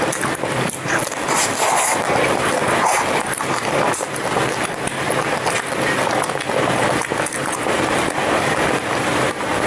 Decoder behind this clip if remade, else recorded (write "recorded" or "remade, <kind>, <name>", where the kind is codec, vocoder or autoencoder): recorded